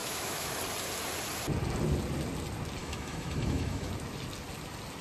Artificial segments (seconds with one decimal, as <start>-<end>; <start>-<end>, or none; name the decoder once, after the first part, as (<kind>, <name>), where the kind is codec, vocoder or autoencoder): 0.0-0.6 (autoencoder, DAC-VAE); 2.8-3.9